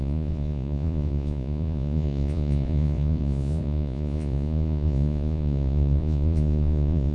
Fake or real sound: fake